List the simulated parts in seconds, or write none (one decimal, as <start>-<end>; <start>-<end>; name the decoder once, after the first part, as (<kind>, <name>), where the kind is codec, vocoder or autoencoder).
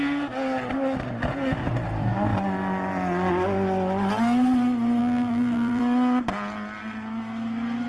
5.0-5.8 (vocoder, BigVGAN v2)